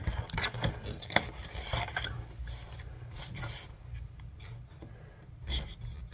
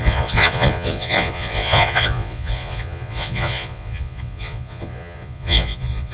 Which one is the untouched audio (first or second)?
first